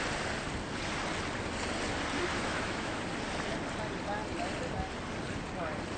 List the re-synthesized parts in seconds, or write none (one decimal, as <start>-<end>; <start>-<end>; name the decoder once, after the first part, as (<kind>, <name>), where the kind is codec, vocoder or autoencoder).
2.3-3.0 (autoencoder, DAC-VAE)